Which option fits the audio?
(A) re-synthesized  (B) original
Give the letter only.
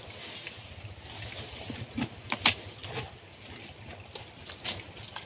B